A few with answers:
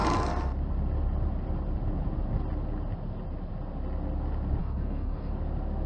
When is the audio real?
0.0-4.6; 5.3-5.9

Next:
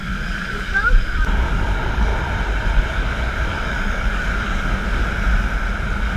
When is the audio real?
2.1-2.9; 5.0-5.8